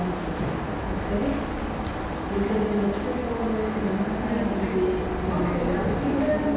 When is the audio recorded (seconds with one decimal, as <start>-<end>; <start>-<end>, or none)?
0.0-6.6